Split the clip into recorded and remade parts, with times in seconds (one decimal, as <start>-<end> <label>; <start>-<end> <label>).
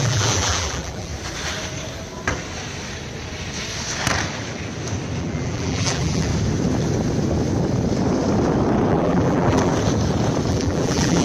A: 0.0-1.1 remade; 1.1-5.2 recorded; 5.2-6.3 remade; 6.3-8.9 recorded; 8.9-9.7 remade; 9.7-10.5 recorded; 10.5-11.2 remade